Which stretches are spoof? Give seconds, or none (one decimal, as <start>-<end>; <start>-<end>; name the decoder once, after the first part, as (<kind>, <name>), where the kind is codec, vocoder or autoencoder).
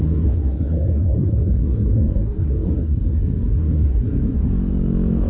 0.0-4.5 (codec, SNAC)